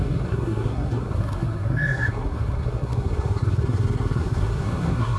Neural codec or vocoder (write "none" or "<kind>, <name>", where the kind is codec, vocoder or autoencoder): codec, SNAC